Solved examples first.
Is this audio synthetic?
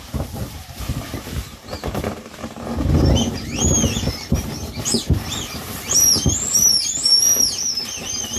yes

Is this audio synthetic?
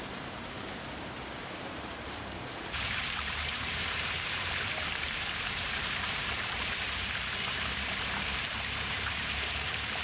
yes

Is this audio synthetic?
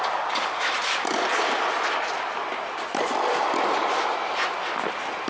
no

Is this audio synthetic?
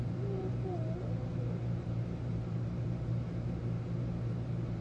yes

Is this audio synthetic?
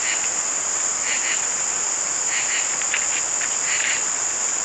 no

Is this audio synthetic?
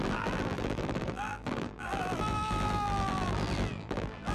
yes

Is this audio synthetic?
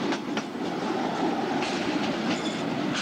no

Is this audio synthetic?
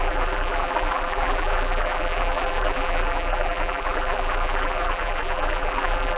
yes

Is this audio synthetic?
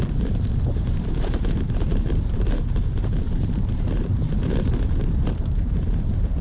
yes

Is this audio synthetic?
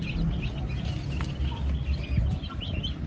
no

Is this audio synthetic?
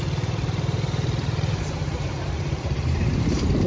yes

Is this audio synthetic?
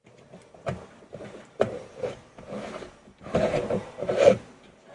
yes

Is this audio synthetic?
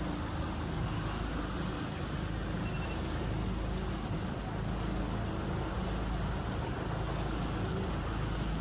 no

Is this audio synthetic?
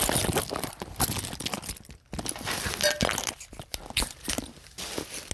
no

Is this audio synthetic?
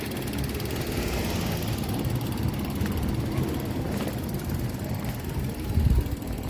no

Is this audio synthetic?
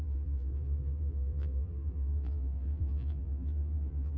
yes